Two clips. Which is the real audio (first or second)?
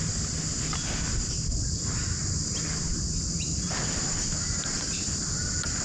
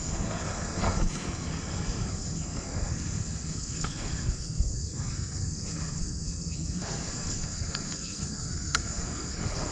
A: first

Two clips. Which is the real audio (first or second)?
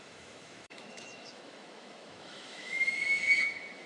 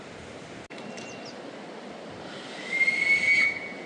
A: second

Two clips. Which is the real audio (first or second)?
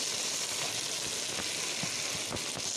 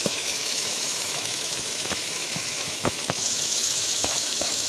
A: first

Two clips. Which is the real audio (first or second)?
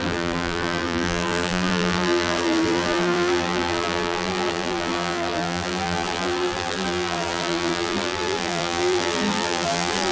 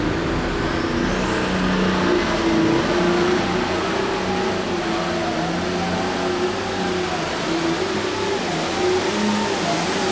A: second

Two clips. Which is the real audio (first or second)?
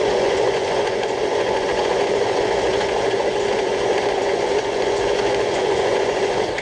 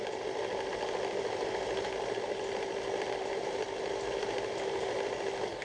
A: second